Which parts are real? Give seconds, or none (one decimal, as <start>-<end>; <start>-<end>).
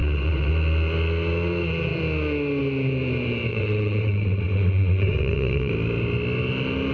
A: 0.5-3.5; 5.7-6.9